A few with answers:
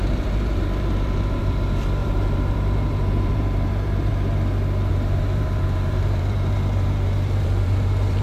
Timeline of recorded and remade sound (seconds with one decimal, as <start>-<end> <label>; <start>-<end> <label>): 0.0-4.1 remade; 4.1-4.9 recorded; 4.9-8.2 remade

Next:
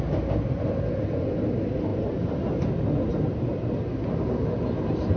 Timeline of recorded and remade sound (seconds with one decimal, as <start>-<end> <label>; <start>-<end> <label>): 0.0-5.2 recorded

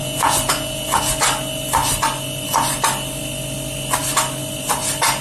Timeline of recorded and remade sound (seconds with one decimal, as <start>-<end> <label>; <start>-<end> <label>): 0.0-1.0 remade; 1.0-5.2 recorded

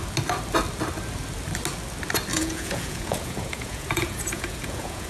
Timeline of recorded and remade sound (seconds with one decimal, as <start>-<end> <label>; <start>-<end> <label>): 0.0-2.3 recorded; 2.3-5.1 remade

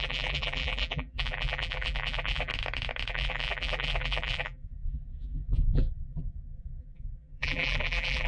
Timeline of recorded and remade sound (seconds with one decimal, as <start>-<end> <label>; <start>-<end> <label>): 0.0-2.5 remade; 2.5-3.1 recorded; 3.1-8.3 remade

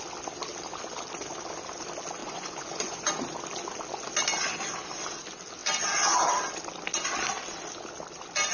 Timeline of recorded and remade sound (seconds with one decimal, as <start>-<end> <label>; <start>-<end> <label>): 0.0-2.2 recorded; 2.2-3.1 remade; 3.1-8.5 recorded

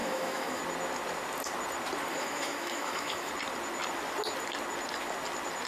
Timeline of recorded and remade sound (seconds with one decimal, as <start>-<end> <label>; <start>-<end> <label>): 0.0-0.6 remade; 0.6-2.1 recorded; 2.1-3.3 remade; 3.3-5.7 recorded

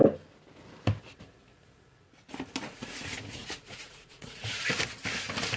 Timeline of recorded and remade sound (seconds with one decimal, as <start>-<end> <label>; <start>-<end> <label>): 0.0-2.7 recorded; 2.7-4.6 remade; 4.6-5.6 recorded